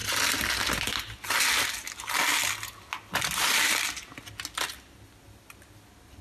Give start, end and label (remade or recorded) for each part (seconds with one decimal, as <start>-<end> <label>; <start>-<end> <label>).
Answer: 0.0-6.2 recorded